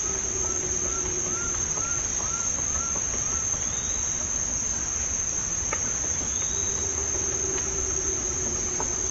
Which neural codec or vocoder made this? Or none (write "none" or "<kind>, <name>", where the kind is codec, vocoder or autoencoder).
none